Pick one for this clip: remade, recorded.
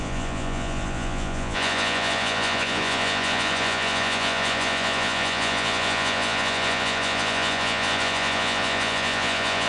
remade